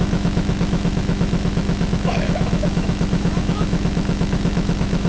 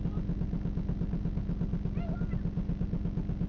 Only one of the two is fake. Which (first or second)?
first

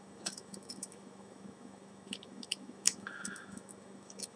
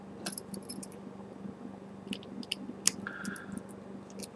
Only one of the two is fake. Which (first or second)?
first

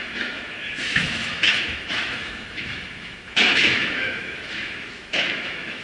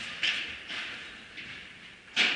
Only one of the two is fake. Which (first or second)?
first